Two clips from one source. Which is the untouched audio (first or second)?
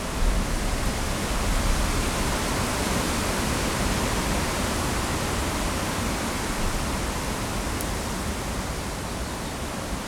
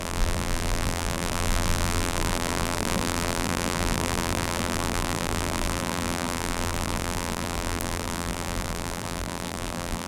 first